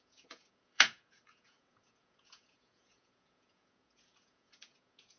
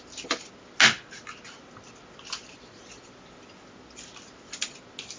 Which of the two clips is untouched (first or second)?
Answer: second